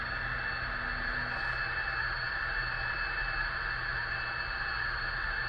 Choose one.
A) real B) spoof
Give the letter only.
A